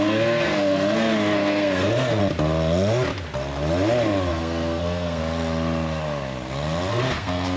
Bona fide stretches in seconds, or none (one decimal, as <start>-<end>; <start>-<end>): 2.2-4.3; 5.2-6.9